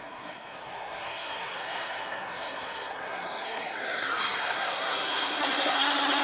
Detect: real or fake fake